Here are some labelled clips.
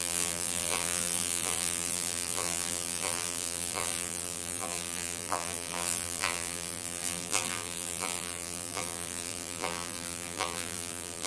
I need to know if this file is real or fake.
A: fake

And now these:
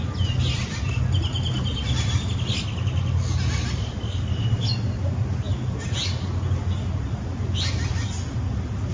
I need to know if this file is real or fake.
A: real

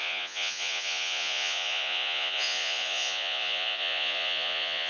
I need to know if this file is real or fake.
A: fake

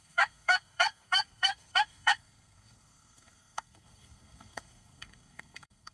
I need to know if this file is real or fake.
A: fake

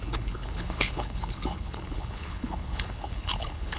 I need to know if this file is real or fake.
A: fake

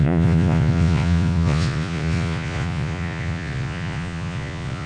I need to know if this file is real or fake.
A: fake